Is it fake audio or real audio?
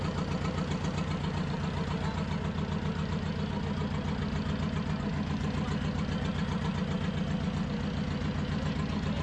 real